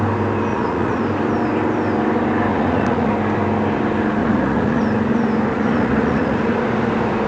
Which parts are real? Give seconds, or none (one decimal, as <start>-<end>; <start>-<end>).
0.0-0.5; 1.0-2.5; 3.1-4.2; 4.8-5.5; 6.5-7.3